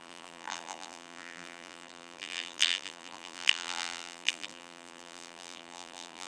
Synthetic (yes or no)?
yes